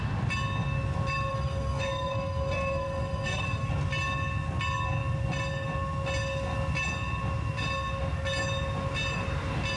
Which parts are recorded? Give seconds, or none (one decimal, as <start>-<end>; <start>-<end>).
0.0-1.3; 3.7-9.8